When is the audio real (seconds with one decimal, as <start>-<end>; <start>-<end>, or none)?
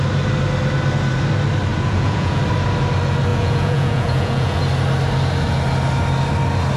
0.0-1.7; 2.4-3.3; 4.6-6.8